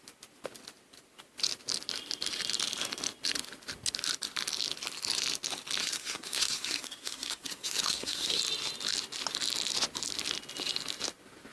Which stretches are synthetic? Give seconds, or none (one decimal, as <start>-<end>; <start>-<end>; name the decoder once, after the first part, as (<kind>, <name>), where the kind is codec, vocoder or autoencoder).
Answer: 5.8-8.4 (codec, SNAC)

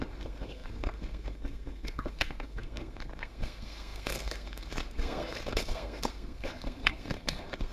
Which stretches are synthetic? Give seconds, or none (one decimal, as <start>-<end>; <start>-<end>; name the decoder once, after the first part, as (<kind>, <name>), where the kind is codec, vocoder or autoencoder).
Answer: 0.0-7.7 (codec, SNAC)

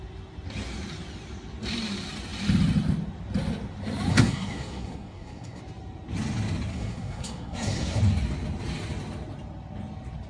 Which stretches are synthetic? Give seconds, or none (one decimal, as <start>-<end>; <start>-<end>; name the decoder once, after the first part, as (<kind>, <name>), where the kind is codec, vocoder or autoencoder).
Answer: 4.1-5.6 (codec, SNAC); 6.7-8.0

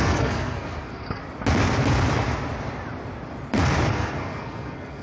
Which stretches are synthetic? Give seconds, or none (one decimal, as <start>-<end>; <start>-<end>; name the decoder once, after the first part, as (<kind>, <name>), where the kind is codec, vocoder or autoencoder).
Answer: 0.0-1.2 (codec, SNAC); 3.9-5.0

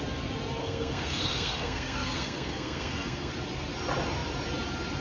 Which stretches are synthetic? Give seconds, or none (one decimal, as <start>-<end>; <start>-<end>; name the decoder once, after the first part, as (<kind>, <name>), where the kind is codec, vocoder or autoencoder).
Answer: 0.6-3.3 (codec, SNAC)

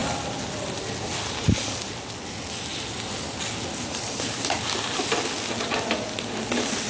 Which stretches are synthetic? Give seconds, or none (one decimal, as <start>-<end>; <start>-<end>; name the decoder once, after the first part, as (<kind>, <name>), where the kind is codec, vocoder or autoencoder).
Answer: none

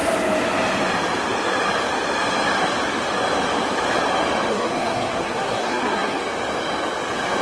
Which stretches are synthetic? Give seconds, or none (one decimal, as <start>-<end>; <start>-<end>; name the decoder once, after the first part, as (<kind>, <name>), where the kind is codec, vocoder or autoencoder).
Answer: 4.5-6.2 (codec, SNAC)